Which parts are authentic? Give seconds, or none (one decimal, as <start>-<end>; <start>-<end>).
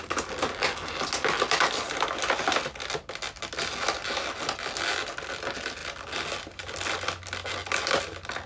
0.0-8.5